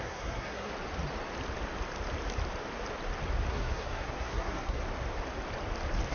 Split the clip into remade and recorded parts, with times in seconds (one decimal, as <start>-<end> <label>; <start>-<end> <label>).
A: 0.0-0.7 remade; 0.7-3.5 recorded; 3.5-4.8 remade; 4.8-6.1 recorded